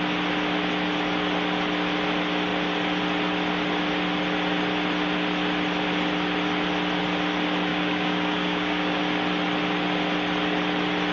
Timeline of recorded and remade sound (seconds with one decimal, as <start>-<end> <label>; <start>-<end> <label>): 0.0-7.7 recorded; 7.7-9.0 remade; 9.0-11.1 recorded